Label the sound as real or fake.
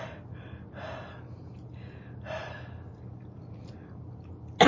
real